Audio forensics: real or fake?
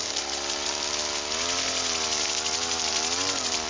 real